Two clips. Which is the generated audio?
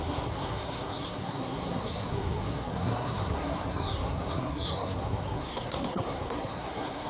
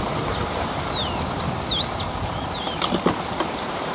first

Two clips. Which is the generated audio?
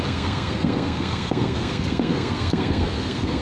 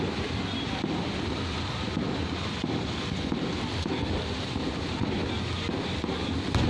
first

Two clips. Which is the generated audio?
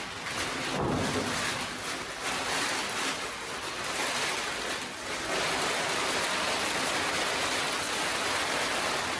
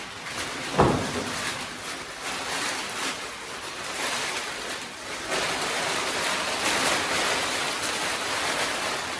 second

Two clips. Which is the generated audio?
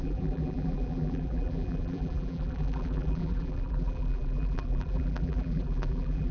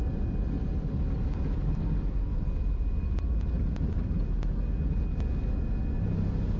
first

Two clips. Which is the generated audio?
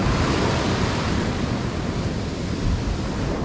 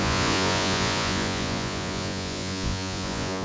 second